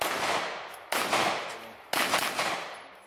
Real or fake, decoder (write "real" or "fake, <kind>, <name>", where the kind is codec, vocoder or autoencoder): real